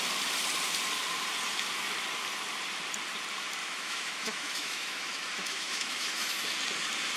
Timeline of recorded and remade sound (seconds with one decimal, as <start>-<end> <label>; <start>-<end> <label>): 0.0-3.6 recorded; 3.6-6.3 remade; 6.3-7.2 recorded